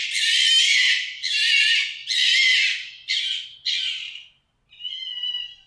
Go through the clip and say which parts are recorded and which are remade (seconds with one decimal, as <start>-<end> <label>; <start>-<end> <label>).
0.0-5.7 recorded